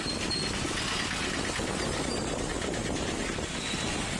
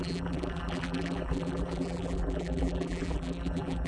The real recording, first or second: first